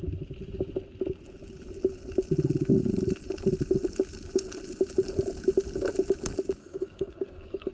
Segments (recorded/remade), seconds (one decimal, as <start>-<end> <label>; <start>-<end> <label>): 0.0-6.6 recorded; 6.6-7.7 remade